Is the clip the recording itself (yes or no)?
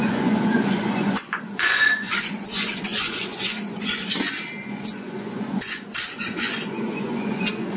no